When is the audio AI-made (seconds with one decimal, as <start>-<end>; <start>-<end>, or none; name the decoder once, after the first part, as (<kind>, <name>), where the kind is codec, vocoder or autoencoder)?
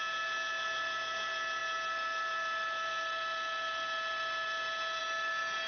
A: none